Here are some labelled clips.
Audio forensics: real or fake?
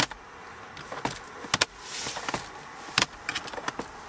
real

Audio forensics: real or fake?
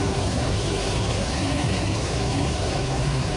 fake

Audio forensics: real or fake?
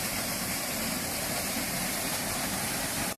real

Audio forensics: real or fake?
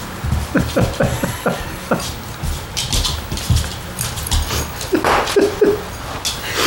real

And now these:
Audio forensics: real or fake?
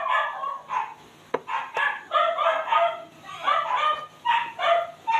real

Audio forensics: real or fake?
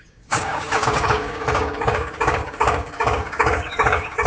fake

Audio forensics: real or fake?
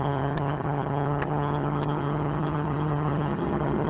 fake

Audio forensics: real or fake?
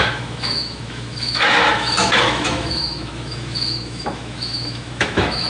fake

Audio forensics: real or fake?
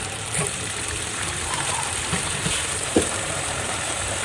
fake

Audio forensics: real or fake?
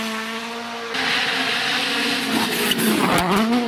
real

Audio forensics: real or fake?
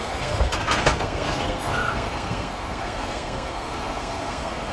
fake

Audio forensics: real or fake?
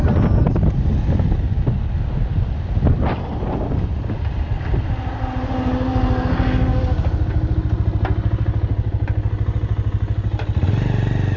real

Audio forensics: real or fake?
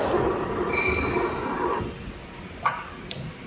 real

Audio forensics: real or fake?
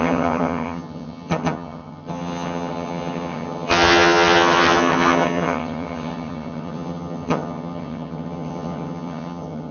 fake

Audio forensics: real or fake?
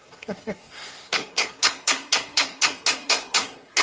fake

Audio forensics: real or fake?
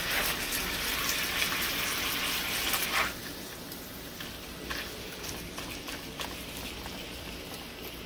real